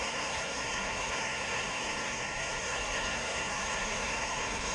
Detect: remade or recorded remade